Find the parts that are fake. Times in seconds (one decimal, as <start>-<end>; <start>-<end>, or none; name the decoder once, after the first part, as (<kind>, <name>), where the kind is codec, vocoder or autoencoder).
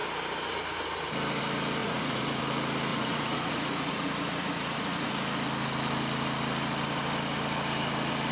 1.8-2.4 (vocoder, Vocos); 2.9-5.1